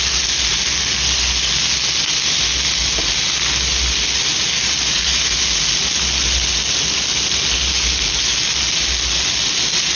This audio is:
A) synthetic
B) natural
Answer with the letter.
B